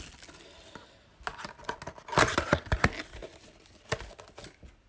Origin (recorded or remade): recorded